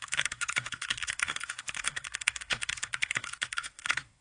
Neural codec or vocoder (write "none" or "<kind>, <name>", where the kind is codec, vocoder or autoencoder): codec, SNAC